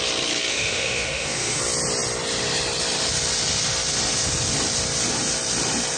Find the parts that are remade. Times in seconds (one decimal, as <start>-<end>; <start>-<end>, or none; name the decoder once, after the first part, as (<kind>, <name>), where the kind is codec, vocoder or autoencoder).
0.5-1.6 (autoencoder, DAC-VAE)